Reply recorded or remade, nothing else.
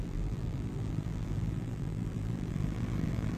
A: remade